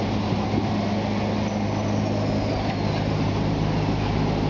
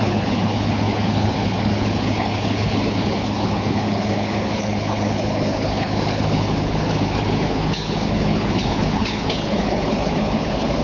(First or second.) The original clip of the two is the first